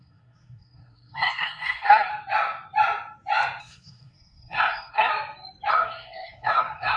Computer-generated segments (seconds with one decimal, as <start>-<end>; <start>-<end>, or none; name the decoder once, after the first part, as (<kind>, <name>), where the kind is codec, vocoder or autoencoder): 0.0-2.1 (codec, SNAC); 3.6-5.1; 5.7-7.0